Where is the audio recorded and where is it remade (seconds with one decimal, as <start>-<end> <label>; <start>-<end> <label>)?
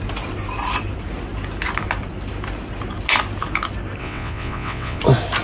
0.0-4.0 recorded; 4.0-5.0 remade; 5.0-5.4 recorded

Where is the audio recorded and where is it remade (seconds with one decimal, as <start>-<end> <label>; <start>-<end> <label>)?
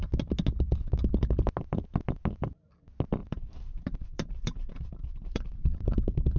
0.0-3.2 recorded; 3.2-6.4 remade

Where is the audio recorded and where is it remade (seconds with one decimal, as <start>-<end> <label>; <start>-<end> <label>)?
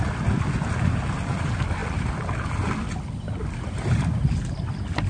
0.0-5.1 recorded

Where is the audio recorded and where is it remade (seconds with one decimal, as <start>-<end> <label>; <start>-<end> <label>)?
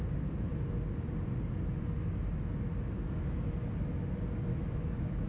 0.0-4.5 recorded; 4.5-5.3 remade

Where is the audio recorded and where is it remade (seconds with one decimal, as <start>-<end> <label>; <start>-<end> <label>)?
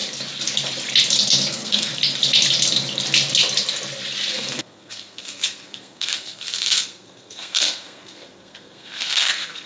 0.0-1.5 recorded; 1.5-1.9 remade; 1.9-4.3 recorded; 4.3-9.7 remade